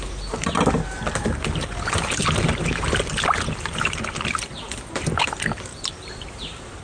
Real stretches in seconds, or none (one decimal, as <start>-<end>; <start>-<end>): 0.0-6.8